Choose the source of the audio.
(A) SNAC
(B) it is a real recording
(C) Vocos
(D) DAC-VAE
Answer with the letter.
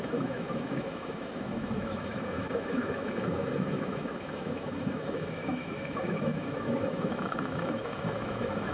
D